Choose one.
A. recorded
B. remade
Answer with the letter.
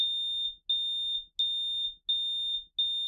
A